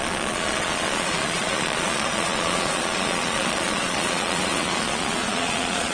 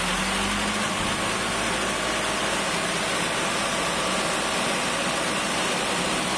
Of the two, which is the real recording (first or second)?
second